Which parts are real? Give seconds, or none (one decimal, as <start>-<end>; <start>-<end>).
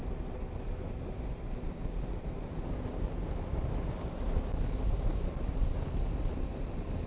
0.0-7.1